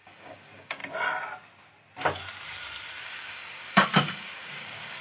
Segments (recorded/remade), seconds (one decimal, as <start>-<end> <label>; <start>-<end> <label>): 0.0-0.8 remade; 0.8-3.0 recorded; 3.0-5.0 remade